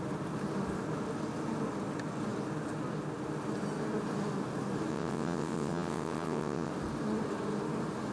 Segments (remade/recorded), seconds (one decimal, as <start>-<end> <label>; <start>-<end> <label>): 0.0-4.9 recorded; 4.9-6.7 remade; 6.7-8.1 recorded